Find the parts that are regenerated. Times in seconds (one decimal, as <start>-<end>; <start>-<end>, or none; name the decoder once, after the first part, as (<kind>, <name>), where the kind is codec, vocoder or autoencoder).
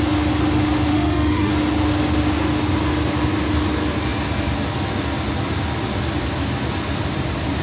0.9-1.5 (autoencoder, DAC-VAE)